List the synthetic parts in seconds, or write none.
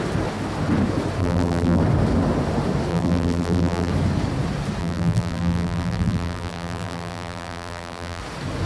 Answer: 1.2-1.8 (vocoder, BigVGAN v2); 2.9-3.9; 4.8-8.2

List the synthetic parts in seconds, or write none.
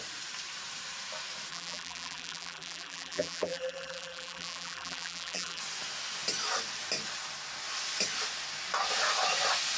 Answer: 1.5-5.6 (vocoder, BigVGAN v2)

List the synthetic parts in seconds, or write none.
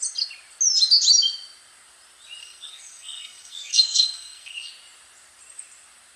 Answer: 2.4-4.7 (codec, SNAC)